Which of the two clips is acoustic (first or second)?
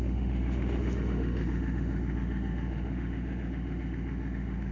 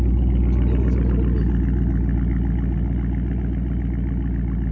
second